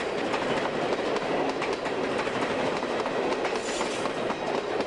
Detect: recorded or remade recorded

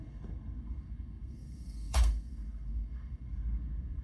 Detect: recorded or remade remade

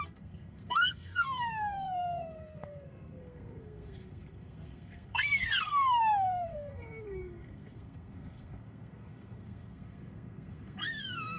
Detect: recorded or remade remade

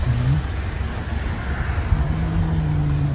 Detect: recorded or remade recorded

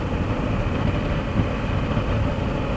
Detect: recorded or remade recorded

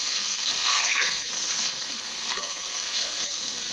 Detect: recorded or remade remade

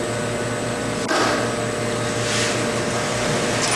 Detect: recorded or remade recorded